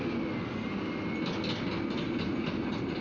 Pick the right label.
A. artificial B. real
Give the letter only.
B